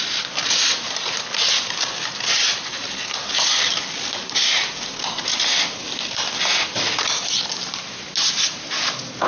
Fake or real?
real